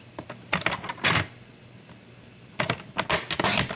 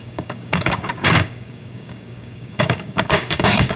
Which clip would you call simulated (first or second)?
second